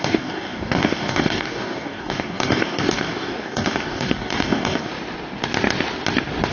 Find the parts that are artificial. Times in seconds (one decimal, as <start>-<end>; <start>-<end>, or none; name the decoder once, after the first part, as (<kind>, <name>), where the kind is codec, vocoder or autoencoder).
0.0-4.9 (codec, DAC)